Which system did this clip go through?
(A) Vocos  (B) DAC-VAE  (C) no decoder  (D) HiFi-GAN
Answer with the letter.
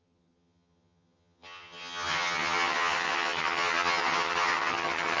D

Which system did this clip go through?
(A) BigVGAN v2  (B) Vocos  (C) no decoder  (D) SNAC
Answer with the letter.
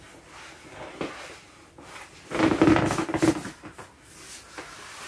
C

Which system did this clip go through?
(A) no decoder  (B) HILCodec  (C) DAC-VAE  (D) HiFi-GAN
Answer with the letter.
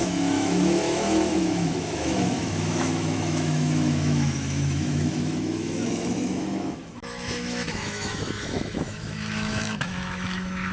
C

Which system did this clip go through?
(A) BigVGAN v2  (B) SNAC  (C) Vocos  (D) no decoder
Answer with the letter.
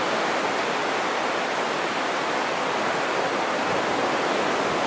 D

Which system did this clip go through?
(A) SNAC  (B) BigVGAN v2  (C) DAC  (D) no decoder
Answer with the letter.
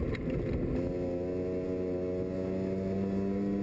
D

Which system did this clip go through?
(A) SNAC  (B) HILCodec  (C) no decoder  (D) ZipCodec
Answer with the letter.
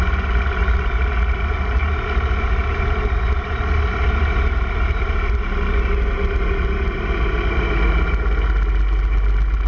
C